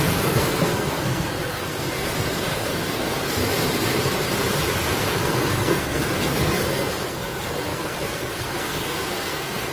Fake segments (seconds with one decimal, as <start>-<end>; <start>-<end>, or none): 0.0-3.4; 4.8-9.7